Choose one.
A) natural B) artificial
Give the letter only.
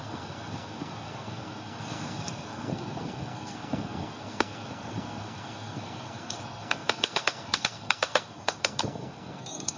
B